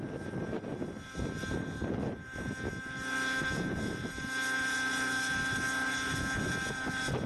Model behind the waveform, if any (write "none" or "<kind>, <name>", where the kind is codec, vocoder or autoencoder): none